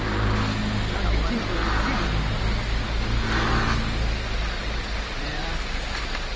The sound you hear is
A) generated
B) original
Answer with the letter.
B